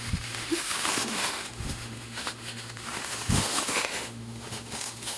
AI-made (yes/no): yes